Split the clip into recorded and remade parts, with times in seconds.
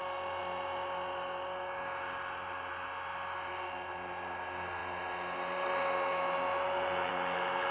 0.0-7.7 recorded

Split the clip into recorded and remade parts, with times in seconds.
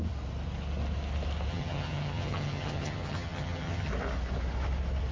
0.0-1.5 recorded; 1.5-3.9 remade; 3.9-5.1 recorded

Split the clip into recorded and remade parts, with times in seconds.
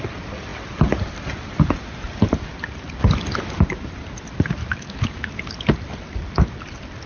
0.0-4.6 recorded; 4.6-5.4 remade; 5.4-7.1 recorded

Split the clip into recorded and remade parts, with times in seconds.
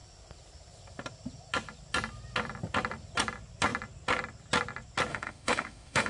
0.0-5.1 recorded; 5.1-6.1 remade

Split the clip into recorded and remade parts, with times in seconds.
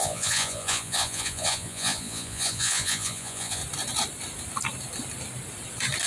0.0-3.6 remade; 3.6-6.1 recorded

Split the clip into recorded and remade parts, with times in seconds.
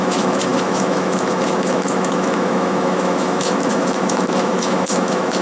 0.0-5.4 remade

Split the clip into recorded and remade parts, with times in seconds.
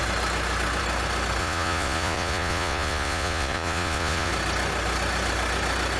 0.0-1.4 recorded; 1.4-4.3 remade; 4.3-6.0 recorded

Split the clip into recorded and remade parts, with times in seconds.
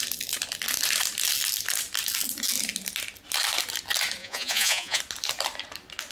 0.0-4.2 recorded; 4.2-5.0 remade; 5.0-6.1 recorded